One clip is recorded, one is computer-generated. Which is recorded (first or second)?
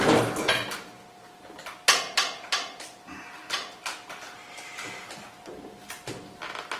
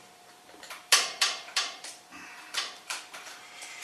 first